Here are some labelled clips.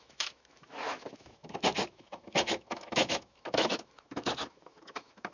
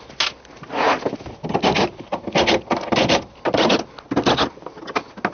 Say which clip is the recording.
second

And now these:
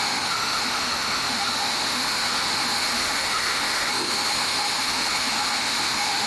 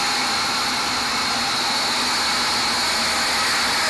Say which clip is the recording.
second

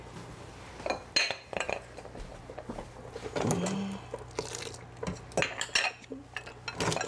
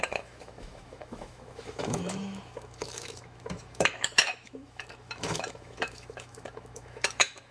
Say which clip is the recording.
first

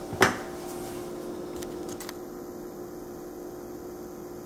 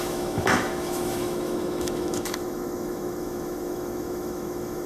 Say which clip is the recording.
first